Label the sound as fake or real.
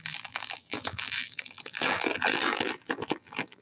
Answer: fake